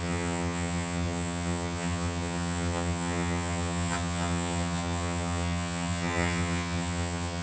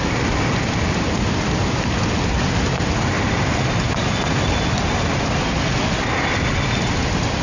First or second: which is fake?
first